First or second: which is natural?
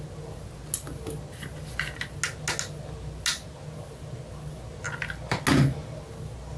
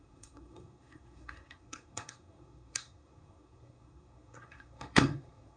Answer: first